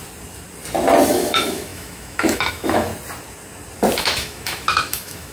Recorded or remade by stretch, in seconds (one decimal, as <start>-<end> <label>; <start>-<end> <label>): 0.0-1.1 recorded; 1.1-2.9 remade; 2.9-4.0 recorded; 4.0-5.3 remade